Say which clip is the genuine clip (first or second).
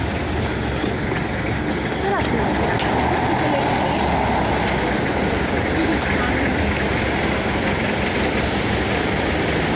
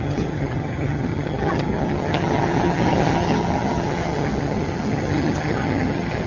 first